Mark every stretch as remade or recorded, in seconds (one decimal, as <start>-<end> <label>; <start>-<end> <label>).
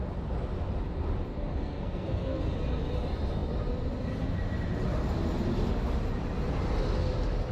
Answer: 0.0-1.5 recorded; 1.5-2.4 remade; 2.4-7.5 recorded